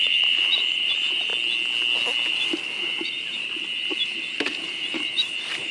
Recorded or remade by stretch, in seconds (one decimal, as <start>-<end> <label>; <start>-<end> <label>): 0.0-1.3 remade; 1.3-2.3 recorded; 2.3-5.7 remade